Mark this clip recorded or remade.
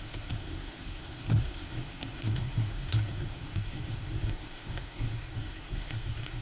remade